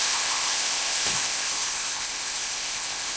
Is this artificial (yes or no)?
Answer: yes